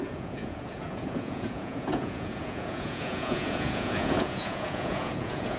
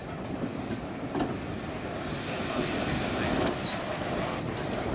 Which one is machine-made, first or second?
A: first